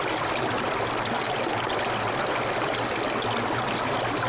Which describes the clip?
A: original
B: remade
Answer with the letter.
A